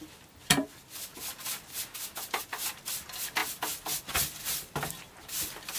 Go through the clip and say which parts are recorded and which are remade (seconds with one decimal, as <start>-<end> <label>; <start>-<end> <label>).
0.0-5.8 recorded